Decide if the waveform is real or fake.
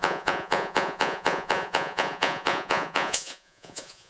fake